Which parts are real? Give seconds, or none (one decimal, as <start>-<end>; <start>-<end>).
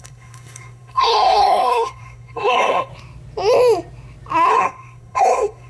2.9-4.5